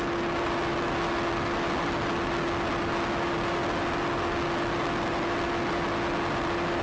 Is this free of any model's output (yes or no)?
yes